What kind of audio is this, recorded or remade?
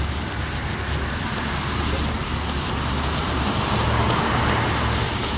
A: recorded